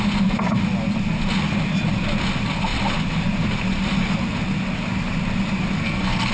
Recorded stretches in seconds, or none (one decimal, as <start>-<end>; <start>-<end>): 0.0-5.8